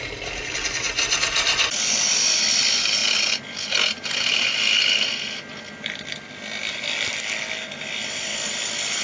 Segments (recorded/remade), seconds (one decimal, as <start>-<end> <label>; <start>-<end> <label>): 0.0-9.0 recorded